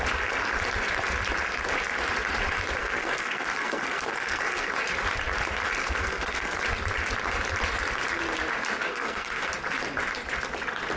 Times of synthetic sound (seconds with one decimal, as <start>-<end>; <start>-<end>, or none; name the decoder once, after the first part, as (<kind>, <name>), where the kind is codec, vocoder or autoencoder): 2.8-4.7 (codec, SNAC); 5.8-6.6; 8.9-9.5